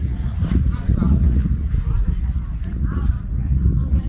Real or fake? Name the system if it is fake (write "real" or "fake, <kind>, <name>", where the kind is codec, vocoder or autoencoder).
fake, vocoder, Vocos